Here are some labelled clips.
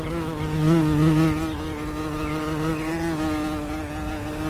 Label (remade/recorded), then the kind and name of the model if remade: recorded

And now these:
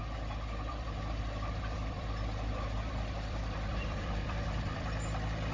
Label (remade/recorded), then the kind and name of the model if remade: remade, vocoder, BigVGAN v2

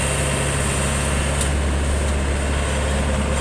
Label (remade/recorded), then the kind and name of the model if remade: recorded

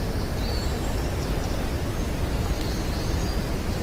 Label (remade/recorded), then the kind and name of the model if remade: remade, vocoder, BigVGAN v2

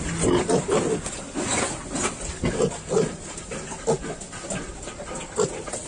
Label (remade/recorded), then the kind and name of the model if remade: recorded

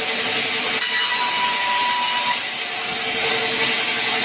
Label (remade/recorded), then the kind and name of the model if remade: recorded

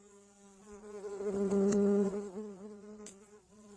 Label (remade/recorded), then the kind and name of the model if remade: remade, vocoder, Vocos